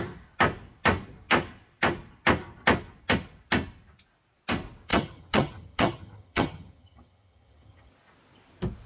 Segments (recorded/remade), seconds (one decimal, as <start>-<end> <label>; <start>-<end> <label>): 0.0-4.9 recorded; 4.9-7.9 remade; 7.9-8.9 recorded